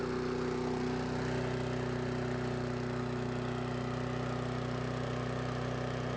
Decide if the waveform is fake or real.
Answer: real